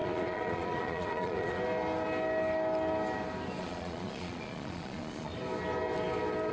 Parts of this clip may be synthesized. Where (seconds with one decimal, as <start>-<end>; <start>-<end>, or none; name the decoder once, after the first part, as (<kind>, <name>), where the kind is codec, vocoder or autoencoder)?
0.0-1.6 (vocoder, Vocos); 3.6-5.3